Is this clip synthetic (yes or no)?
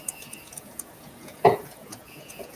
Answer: yes